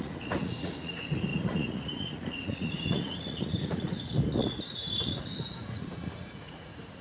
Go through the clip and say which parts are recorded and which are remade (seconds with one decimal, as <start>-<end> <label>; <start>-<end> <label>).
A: 0.0-7.0 remade